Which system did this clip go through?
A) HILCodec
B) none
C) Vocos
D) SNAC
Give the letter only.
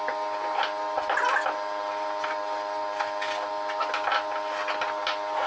B